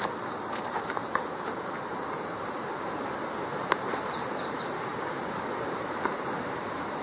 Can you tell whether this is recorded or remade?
remade